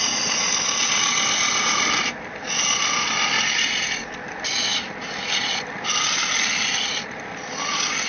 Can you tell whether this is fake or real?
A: real